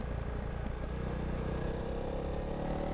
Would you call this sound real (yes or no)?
yes